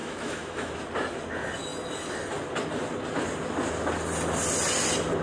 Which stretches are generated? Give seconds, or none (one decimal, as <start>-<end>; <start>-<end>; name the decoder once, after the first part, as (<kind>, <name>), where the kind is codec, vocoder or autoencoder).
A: 0.0-0.7 (autoencoder, DAC-VAE)